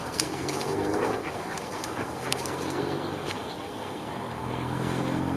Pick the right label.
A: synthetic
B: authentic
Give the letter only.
A